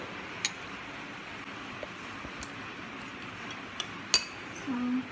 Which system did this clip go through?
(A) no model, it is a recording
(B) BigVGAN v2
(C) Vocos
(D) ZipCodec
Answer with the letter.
A